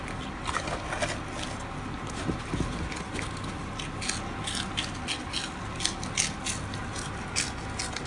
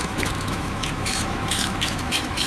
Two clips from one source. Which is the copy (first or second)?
second